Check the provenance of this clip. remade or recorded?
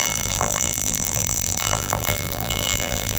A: remade